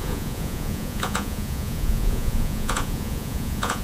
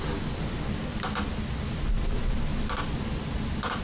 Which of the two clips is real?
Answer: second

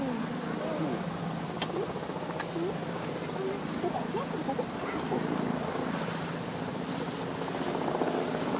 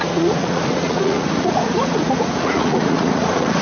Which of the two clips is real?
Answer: first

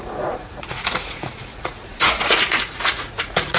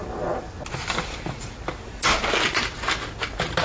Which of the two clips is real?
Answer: second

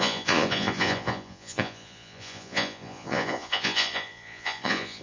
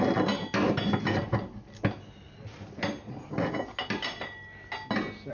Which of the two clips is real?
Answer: second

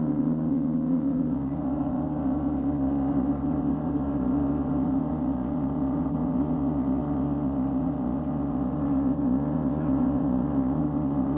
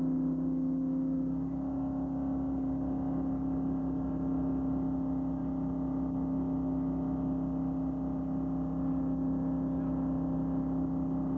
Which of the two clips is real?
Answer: second